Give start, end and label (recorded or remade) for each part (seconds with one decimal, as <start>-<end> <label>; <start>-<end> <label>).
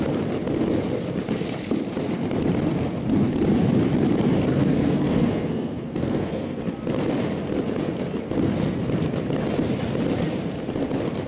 0.0-4.5 recorded; 4.5-6.6 remade; 6.6-11.3 recorded